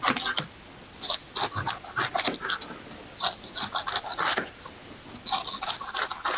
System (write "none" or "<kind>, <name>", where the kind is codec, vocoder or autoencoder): none